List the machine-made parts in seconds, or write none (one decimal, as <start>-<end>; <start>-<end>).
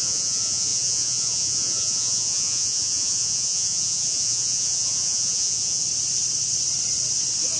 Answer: 0.0-5.8